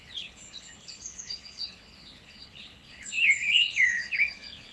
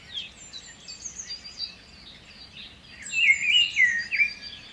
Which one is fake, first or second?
first